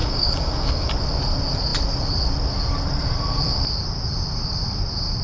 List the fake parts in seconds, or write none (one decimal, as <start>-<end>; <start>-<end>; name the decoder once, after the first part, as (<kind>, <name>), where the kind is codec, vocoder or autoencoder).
0.0-0.9 (codec, DAC)